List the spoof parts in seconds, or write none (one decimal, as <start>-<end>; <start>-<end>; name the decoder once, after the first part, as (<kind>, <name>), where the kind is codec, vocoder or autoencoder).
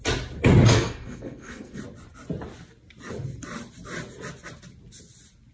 0.7-1.8 (codec, SNAC)